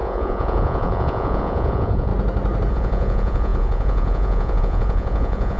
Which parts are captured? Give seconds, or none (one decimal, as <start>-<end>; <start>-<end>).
2.1-2.7